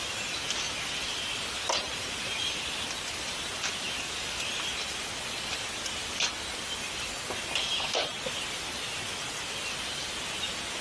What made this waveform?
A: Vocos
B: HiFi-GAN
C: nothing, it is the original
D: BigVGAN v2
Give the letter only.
C